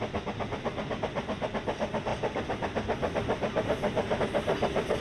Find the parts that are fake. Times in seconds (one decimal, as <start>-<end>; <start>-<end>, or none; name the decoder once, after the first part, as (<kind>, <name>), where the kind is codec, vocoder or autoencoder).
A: none